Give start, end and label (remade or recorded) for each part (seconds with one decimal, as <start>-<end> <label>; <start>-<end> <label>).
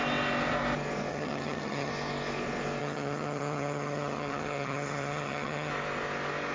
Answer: 0.0-1.1 recorded; 1.1-1.9 remade; 1.9-2.8 recorded; 2.8-5.7 remade; 5.7-6.5 recorded